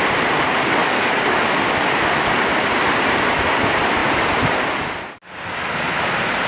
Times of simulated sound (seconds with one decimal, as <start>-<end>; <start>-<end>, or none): 0.8-1.6